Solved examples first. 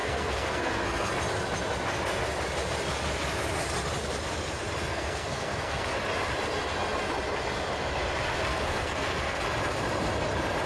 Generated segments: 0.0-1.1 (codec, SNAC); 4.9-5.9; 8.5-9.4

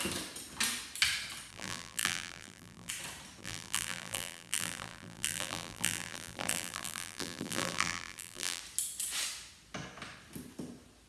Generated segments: 1.5-2.9 (vocoder, BigVGAN v2); 3.4-8.6

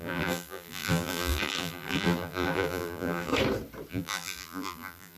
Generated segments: 0.0-3.3 (vocoder, BigVGAN v2); 3.9-5.2

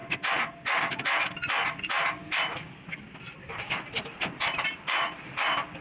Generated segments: none

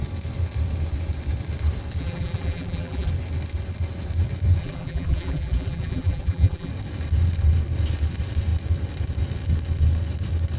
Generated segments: 2.0-3.1 (vocoder, BigVGAN v2); 4.6-6.7

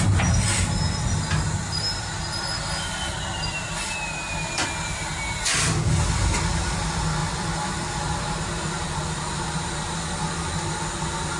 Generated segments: none